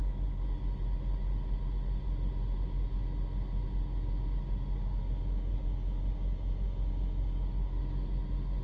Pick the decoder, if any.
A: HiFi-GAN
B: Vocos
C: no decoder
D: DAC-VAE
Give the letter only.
C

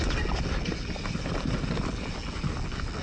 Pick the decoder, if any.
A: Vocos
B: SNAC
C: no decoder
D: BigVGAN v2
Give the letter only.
C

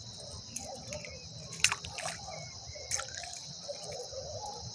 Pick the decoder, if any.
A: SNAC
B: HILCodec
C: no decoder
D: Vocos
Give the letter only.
C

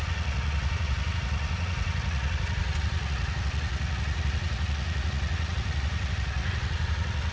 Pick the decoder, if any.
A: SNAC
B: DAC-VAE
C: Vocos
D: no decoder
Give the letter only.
C